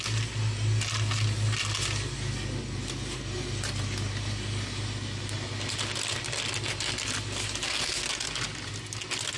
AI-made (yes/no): no